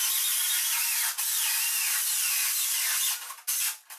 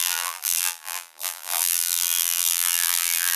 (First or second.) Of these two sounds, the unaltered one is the first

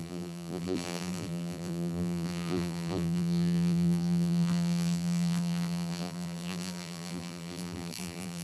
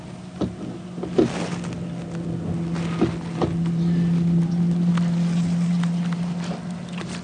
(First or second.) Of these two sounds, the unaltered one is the second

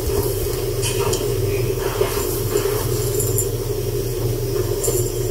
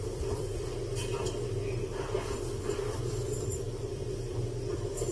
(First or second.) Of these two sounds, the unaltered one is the first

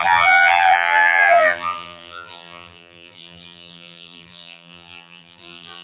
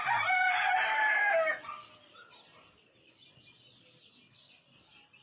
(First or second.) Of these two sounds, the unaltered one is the second